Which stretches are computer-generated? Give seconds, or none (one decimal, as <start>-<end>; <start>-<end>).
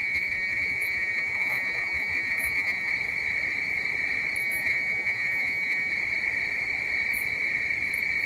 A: 0.0-2.9; 4.4-5.9